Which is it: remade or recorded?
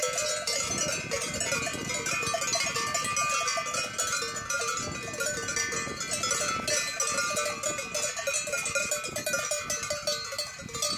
recorded